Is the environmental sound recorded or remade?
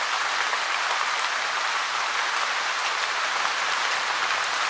recorded